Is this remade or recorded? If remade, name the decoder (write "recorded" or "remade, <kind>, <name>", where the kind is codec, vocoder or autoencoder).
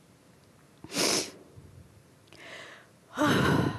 recorded